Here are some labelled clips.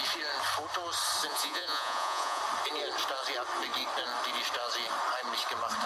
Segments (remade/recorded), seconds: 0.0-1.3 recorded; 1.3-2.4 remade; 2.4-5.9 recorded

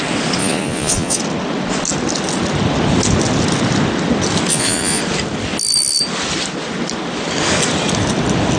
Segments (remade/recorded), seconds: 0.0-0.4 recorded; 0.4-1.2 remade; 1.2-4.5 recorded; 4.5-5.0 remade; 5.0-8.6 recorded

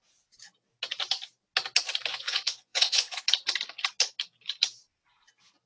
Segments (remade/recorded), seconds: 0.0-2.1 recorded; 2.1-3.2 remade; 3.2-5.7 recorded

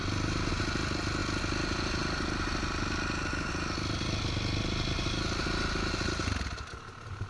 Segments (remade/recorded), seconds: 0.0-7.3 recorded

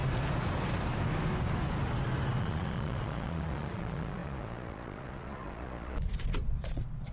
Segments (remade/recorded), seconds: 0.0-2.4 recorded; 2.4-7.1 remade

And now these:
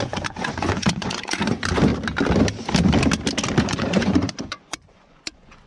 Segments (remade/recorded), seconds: 0.0-1.9 remade; 1.9-3.6 recorded; 3.6-5.7 remade

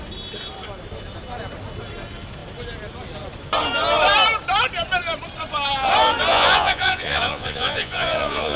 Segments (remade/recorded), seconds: 0.0-6.3 recorded; 6.3-8.6 remade

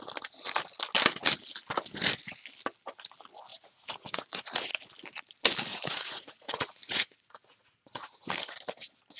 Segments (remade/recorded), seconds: 0.0-3.5 recorded; 3.5-4.7 remade; 4.7-5.7 recorded; 5.7-8.3 remade; 8.3-9.2 recorded